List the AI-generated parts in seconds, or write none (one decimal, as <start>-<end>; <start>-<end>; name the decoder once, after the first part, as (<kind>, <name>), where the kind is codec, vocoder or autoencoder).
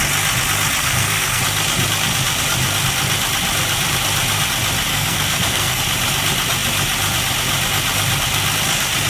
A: 0.8-1.4 (codec, SNAC); 4.9-5.8